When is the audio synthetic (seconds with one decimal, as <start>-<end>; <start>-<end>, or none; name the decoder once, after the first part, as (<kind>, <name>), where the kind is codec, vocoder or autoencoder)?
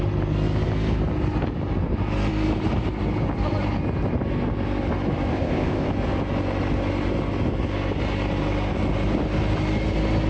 5.3-5.9 (codec, ZipCodec)